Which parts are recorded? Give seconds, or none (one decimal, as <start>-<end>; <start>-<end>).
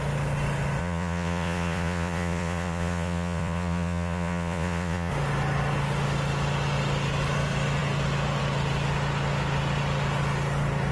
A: 0.0-0.8; 5.1-10.9